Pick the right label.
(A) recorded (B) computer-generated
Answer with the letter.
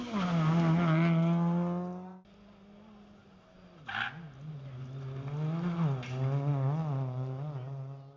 A